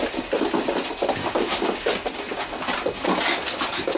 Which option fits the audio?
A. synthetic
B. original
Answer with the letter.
B